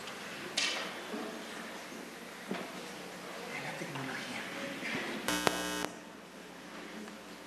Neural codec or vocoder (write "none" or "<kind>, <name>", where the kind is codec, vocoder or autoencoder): none